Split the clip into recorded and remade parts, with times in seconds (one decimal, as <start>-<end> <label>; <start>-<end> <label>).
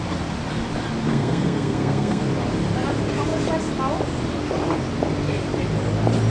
0.0-1.1 recorded; 1.1-2.2 remade; 2.2-6.3 recorded